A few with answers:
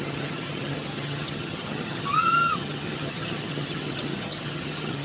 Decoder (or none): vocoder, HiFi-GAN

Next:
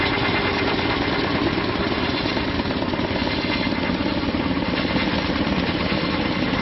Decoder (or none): none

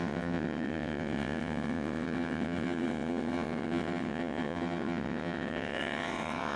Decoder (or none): vocoder, WaveNeXt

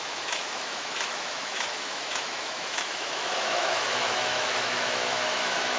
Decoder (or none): autoencoder, DAC-VAE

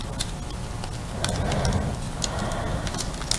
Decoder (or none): none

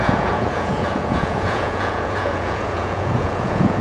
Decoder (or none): vocoder, Vocos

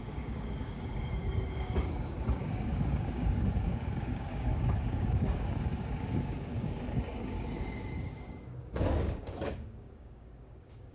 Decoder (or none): codec, DAC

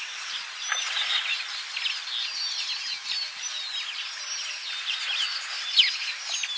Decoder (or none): none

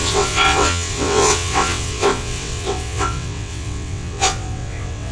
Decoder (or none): vocoder, WaveNeXt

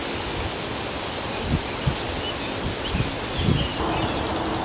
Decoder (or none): none